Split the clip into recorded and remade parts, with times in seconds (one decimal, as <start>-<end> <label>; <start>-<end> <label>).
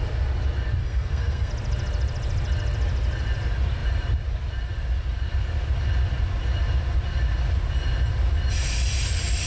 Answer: 0.0-0.8 recorded; 0.8-1.5 remade; 1.5-9.5 recorded